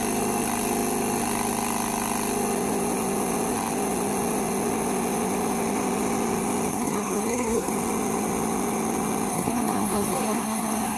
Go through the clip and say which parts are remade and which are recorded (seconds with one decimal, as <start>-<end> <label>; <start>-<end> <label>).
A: 0.0-6.7 recorded; 6.7-7.7 remade; 7.7-9.3 recorded; 9.3-11.0 remade